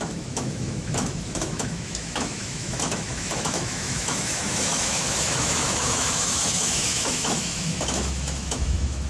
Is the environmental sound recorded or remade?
remade